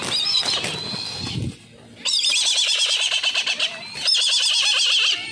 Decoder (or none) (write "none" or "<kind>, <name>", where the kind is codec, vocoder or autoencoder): none